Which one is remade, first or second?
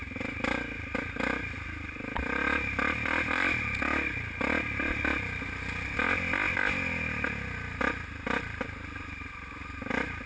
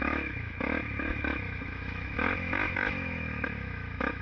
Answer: second